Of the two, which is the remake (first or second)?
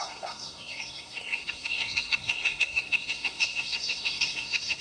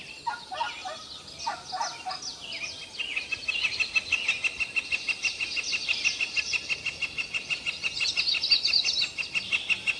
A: first